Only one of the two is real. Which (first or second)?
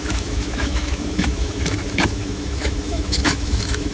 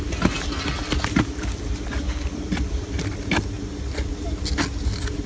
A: second